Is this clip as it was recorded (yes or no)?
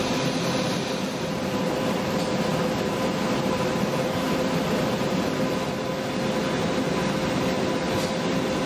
yes